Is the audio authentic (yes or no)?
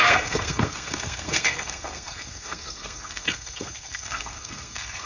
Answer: no